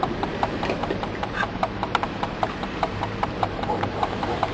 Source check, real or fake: fake